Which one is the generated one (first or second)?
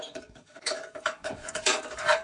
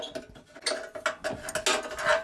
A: first